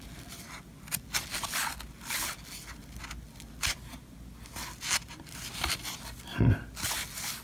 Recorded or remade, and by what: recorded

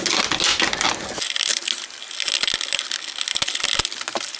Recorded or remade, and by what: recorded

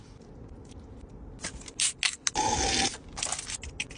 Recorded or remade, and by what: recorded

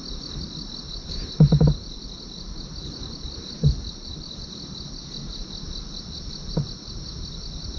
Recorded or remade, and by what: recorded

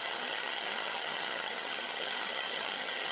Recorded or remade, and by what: remade, vocoder, HiFi-GAN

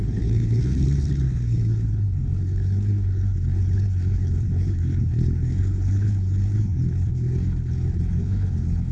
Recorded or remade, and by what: remade, codec, HILCodec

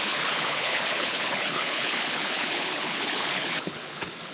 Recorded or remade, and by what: remade, codec, HILCodec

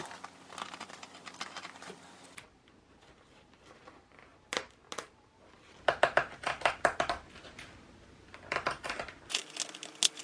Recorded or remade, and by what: recorded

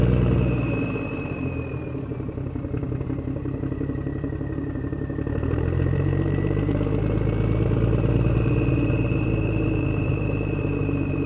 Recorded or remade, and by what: remade, vocoder, BigVGAN v2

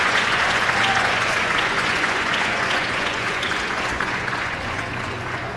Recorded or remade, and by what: remade, vocoder, Vocos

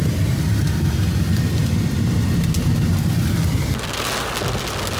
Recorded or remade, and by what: recorded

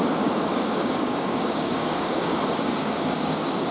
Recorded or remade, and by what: remade, codec, DAC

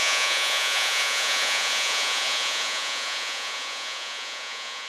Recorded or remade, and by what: remade, vocoder, Vocos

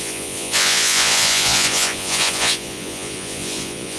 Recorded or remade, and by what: remade, vocoder, Vocos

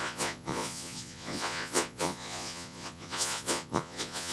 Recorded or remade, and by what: remade, vocoder, Vocos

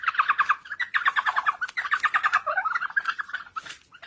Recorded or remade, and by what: recorded